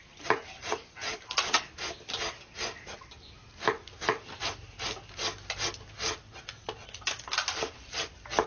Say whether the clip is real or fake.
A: real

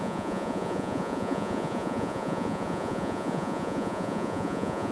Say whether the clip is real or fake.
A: fake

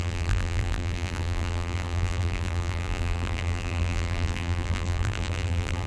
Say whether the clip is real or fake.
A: fake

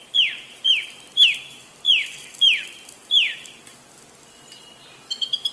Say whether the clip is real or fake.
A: fake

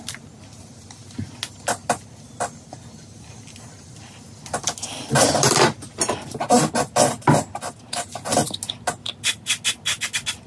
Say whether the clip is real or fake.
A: real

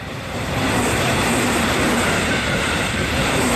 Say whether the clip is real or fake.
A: fake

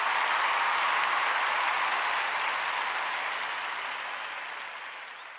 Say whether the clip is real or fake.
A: real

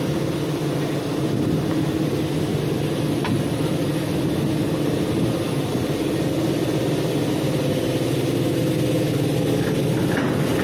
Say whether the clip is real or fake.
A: real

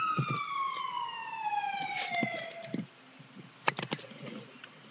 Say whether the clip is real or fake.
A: real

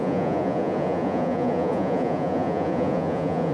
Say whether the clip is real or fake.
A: fake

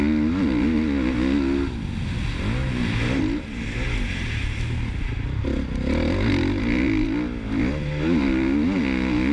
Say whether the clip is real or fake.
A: real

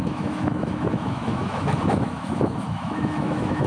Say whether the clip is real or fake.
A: fake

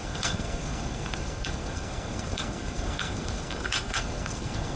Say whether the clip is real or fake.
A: fake